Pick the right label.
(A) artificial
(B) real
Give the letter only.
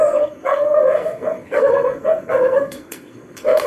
A